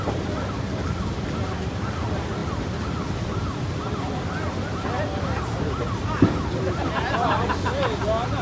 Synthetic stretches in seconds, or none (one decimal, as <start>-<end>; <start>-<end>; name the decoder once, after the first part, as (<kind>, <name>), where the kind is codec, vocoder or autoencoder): none